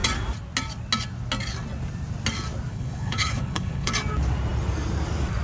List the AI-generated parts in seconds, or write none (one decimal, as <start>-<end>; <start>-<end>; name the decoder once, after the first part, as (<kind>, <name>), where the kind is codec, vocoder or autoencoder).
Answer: 2.7-3.9 (codec, HILCodec)